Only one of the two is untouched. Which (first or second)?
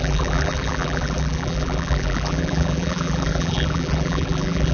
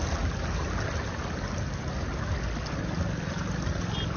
second